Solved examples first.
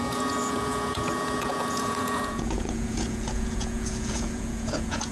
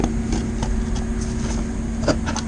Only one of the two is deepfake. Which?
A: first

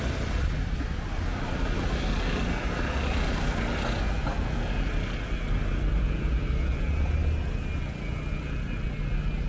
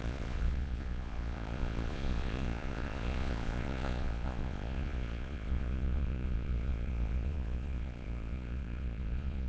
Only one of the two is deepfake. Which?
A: second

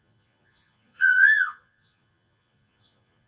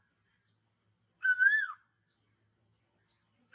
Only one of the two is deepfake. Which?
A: first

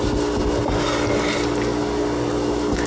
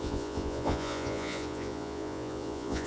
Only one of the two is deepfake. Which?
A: second